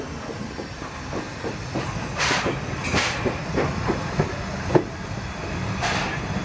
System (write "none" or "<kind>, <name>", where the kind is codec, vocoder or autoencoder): none